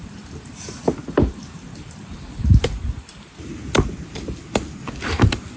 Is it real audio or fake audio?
real